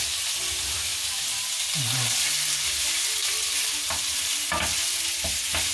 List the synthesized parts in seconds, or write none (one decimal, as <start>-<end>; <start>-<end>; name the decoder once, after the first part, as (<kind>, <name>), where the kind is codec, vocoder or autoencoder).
3.2-3.7 (vocoder, BigVGAN v2)